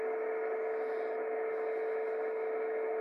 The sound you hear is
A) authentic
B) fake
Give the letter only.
A